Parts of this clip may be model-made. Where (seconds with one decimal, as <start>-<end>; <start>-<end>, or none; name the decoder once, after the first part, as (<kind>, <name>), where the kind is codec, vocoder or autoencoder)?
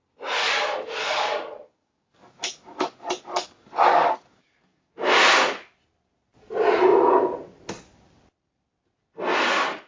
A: 0.4-4.9 (codec, DAC)